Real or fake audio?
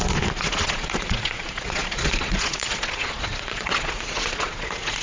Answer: fake